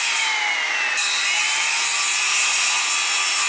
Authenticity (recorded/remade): recorded